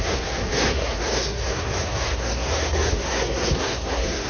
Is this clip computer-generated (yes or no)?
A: yes